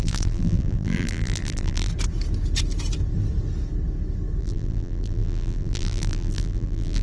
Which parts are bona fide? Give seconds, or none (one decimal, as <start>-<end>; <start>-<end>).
1.9-4.4